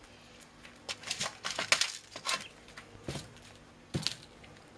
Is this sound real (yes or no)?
yes